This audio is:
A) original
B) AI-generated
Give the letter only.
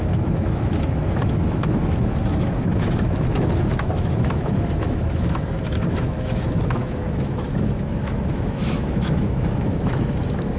B